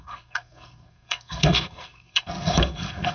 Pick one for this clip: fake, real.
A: fake